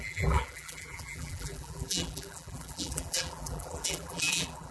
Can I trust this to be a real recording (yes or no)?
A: no